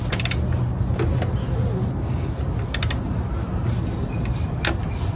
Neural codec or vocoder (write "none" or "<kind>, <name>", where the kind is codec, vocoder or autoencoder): none